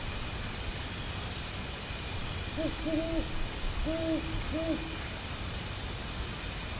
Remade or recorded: recorded